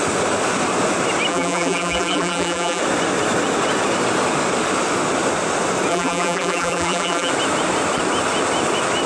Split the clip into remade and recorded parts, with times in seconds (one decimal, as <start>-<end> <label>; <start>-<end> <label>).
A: 0.0-1.3 recorded; 1.3-2.8 remade; 2.8-5.9 recorded; 5.9-7.3 remade; 7.3-9.1 recorded